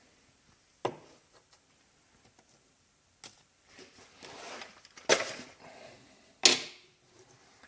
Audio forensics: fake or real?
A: real